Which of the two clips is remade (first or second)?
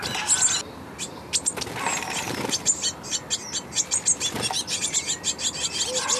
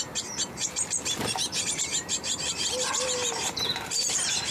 second